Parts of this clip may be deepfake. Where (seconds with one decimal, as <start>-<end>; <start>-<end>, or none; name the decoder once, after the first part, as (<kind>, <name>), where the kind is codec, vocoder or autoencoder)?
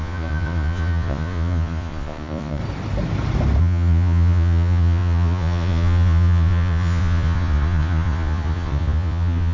0.0-2.6 (vocoder, Vocos); 3.6-9.5